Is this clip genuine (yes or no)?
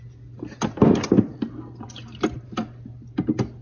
yes